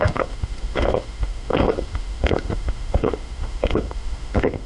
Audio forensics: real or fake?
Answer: fake